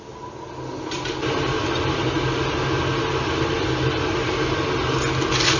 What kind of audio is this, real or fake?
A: real